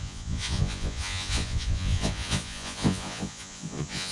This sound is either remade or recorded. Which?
remade